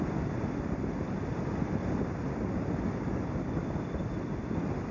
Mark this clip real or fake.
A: real